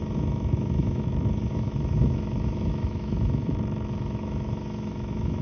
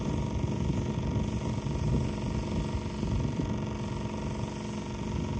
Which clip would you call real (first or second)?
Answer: second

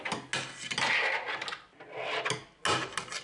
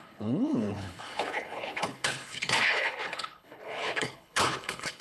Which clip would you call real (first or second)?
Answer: first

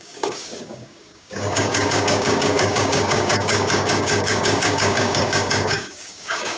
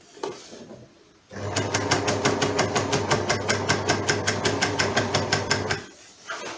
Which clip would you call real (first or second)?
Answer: second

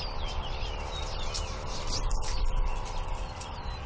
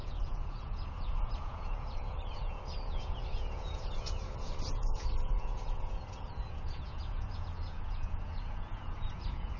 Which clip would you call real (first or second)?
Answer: first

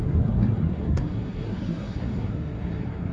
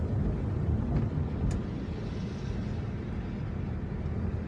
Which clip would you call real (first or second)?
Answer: second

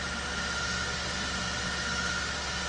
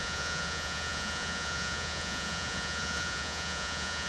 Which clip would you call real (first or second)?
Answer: first